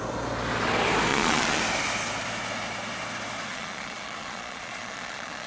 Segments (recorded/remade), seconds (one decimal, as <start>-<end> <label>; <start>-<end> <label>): 0.0-1.1 recorded; 1.1-1.6 remade; 1.6-3.5 recorded; 3.5-5.5 remade

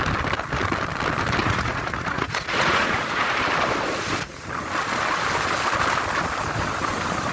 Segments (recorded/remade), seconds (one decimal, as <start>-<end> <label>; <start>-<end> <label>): 0.0-1.4 recorded; 1.4-3.2 remade; 3.2-7.3 recorded